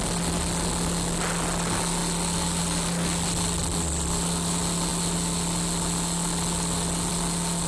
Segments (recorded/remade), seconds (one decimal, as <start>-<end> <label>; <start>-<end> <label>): 0.0-7.7 recorded